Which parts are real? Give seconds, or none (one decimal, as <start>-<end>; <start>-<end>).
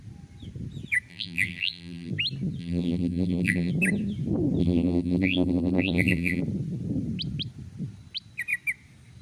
0.0-1.1; 2.1-2.6; 3.7-4.6; 6.4-9.2